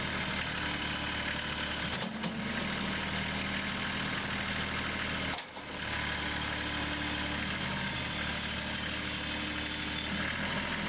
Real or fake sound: real